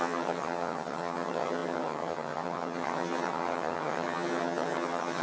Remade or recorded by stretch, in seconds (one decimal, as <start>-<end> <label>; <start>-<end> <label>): 0.0-5.2 remade